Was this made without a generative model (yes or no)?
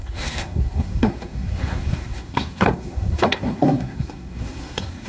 no